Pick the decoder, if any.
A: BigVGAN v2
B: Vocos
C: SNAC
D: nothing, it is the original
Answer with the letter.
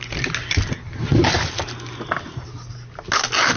D